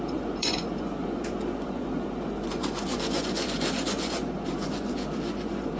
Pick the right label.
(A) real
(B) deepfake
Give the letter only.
B